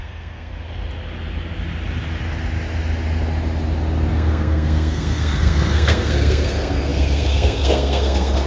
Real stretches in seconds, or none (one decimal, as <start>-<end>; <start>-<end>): 0.5-4.1